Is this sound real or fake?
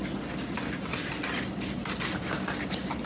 real